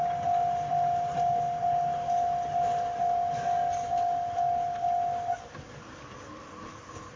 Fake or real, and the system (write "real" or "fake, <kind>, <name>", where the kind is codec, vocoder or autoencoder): real